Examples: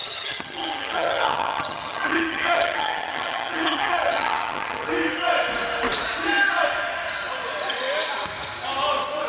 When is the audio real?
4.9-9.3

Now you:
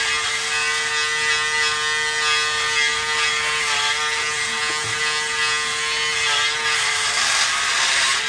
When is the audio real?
0.0-8.3

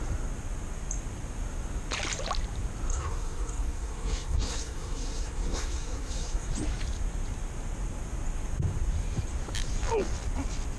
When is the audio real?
0.0-2.9; 6.5-10.8

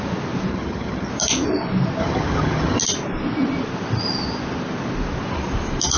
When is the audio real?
0.0-0.5; 1.1-2.0; 2.8-6.0

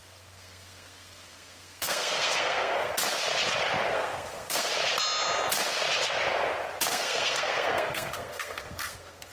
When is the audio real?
2.9-3.9; 4.7-6.9

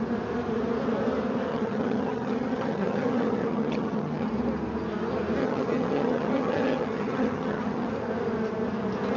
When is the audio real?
0.0-1.5; 4.3-5.4; 7.9-9.2